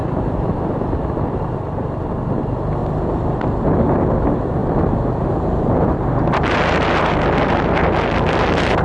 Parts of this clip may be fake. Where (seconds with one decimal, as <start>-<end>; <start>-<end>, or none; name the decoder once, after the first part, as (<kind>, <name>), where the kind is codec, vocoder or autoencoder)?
0.0-1.5 (vocoder, BigVGAN v2); 2.8-3.6